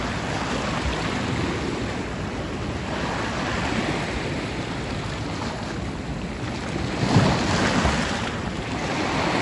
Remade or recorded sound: recorded